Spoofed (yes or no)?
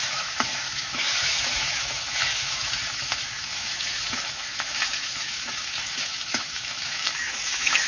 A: yes